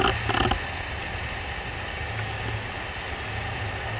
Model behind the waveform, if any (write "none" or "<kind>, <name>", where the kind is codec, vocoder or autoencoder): none